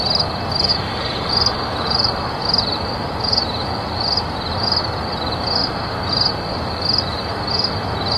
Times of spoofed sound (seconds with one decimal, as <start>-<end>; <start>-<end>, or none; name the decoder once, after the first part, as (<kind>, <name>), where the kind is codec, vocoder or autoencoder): 0.7-4.2 (vocoder, BigVGAN v2); 5.6-7.5